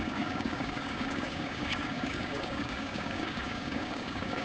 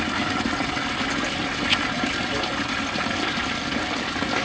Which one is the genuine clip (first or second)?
second